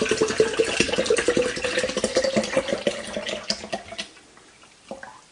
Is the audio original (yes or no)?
yes